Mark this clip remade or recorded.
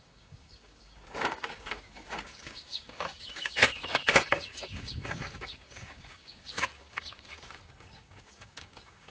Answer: remade